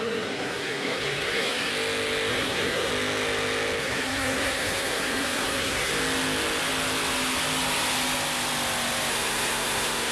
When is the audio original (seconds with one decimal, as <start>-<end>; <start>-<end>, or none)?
1.7-2.3; 2.9-3.8; 5.9-9.1